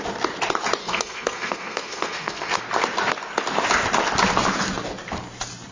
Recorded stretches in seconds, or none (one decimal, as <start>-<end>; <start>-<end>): 0.0-0.8; 2.6-5.7